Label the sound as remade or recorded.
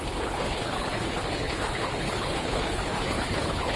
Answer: remade